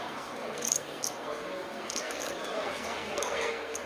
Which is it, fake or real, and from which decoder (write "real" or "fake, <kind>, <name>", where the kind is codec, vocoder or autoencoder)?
fake, codec, SNAC